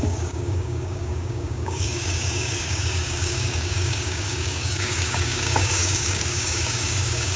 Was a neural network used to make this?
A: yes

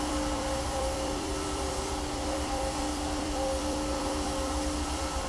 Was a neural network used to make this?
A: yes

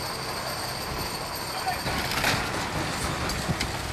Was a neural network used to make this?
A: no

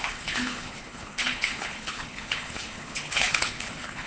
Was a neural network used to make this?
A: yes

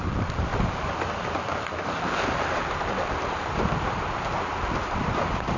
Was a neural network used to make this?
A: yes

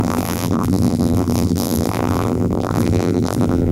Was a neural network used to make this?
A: yes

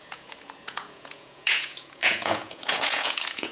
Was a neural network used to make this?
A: yes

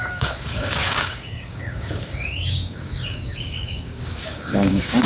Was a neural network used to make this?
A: yes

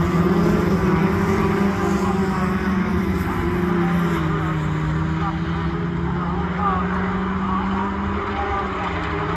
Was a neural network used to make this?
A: no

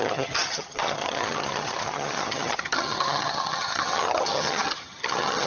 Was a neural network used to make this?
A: yes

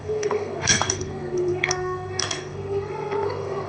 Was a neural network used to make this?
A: yes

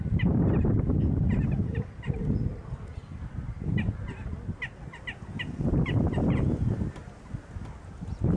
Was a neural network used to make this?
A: no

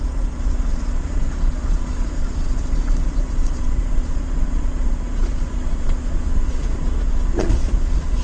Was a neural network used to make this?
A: yes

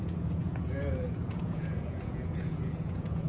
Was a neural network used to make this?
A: yes